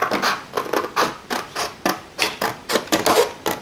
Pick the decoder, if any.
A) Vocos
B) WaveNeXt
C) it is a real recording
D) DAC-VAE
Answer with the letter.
C